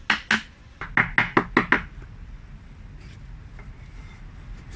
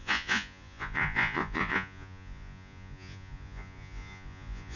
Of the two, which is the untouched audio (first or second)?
first